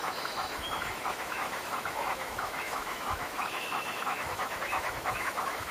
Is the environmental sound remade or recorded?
remade